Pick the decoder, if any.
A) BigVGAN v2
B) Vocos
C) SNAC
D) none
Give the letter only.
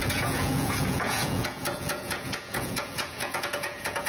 B